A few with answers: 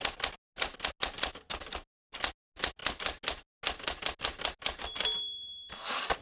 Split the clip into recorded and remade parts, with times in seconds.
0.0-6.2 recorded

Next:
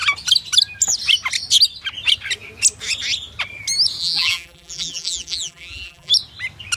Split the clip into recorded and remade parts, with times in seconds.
0.0-4.0 recorded; 4.0-6.1 remade; 6.1-6.8 recorded

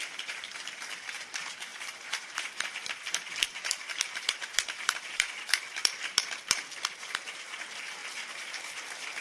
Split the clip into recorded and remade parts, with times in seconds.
0.0-9.2 remade

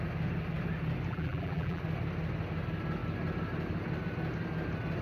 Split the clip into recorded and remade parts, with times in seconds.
0.0-1.1 recorded; 1.1-1.8 remade; 1.8-5.0 recorded

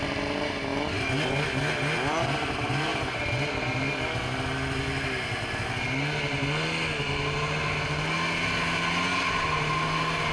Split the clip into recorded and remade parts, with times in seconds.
0.0-10.3 recorded

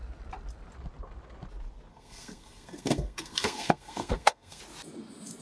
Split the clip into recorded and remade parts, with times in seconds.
0.0-1.9 recorded; 1.9-4.6 remade; 4.6-5.4 recorded

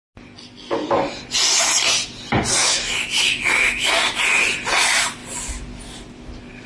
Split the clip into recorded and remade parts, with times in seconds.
0.0-2.6 recorded; 2.6-3.9 remade; 3.9-6.7 recorded

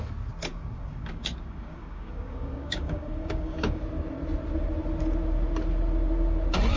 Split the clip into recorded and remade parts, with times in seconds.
0.0-0.5 recorded; 0.5-3.8 remade; 3.8-6.8 recorded